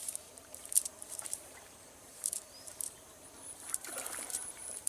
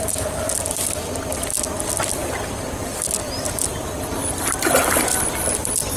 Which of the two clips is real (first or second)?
second